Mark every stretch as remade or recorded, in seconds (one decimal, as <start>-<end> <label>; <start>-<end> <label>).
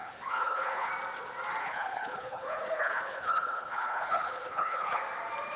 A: 0.0-0.9 remade; 0.9-1.6 recorded; 1.6-5.0 remade; 5.0-5.6 recorded